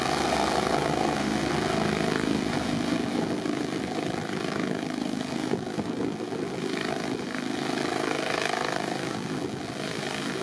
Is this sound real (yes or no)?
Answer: no